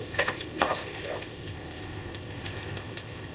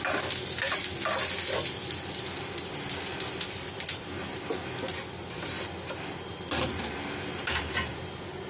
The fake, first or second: first